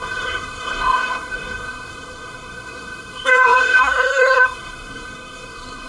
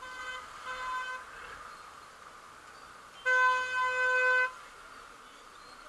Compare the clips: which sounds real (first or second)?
second